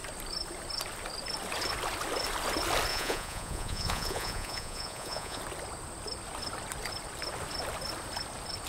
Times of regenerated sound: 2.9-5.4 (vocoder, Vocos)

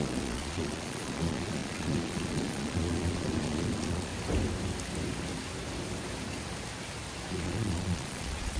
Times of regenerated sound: 0.0-4.1 (vocoder, Vocos); 7.3-8.6

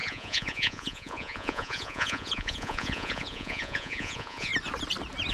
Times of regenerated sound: 0.0-4.5 (vocoder, Vocos)

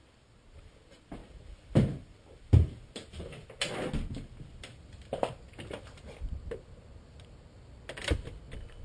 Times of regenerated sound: none

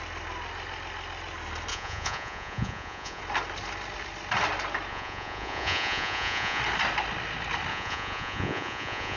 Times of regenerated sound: 1.7-3.2 (vocoder, Vocos); 4.9-6.6; 7.7-9.2